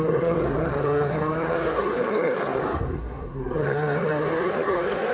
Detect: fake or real fake